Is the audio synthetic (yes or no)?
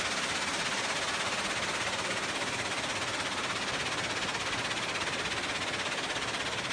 no